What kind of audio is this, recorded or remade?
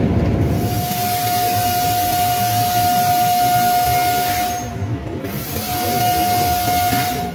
recorded